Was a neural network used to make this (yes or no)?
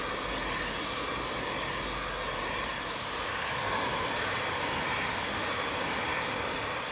no